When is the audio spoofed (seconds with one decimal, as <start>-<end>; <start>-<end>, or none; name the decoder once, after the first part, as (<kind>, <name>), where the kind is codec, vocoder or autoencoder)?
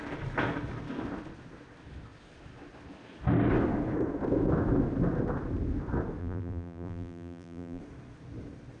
6.2-7.8 (vocoder, BigVGAN v2)